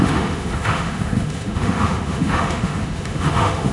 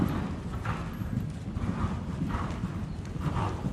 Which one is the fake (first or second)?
first